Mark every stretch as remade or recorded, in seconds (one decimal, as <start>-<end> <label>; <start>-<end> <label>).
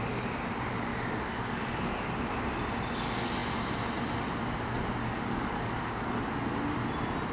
0.0-0.9 recorded; 0.9-2.2 remade; 2.2-5.0 recorded; 5.0-6.2 remade; 6.2-7.3 recorded